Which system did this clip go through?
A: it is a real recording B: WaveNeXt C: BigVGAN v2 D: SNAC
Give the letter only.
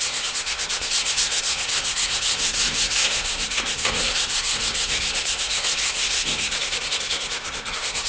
D